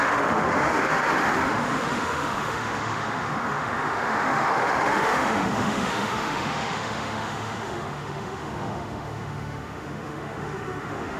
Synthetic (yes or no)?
yes